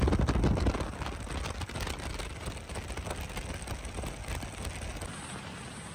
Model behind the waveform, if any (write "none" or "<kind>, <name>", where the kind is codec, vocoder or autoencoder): none